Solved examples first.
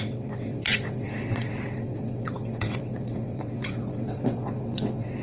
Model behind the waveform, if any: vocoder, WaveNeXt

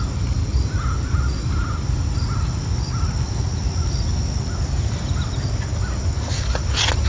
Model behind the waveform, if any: none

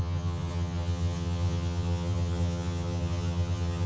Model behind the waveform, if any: vocoder, HiFi-GAN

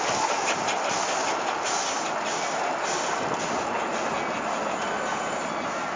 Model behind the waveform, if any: none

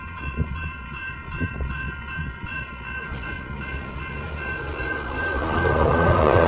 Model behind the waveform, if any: vocoder, Vocos